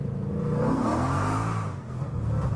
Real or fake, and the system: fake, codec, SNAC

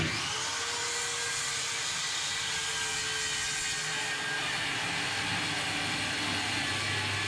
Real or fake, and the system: real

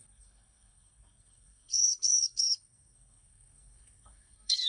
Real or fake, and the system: fake, codec, SNAC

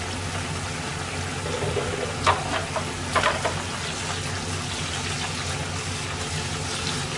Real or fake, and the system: real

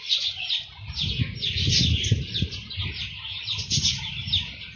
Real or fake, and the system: real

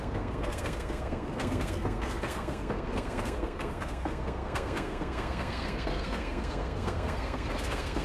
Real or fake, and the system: fake, codec, SNAC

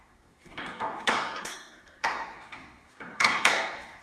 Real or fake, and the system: fake, codec, SNAC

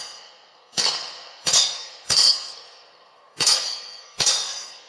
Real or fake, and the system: fake, codec, SNAC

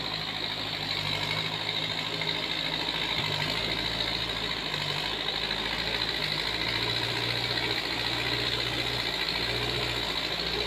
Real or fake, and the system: real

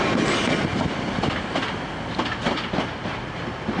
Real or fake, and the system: real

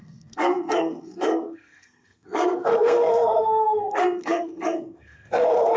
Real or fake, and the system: fake, codec, SNAC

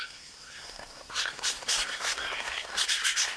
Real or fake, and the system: fake, codec, SNAC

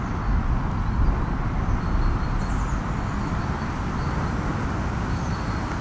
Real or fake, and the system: real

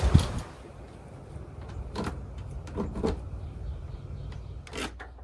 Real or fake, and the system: real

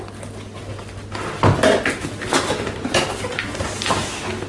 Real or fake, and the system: real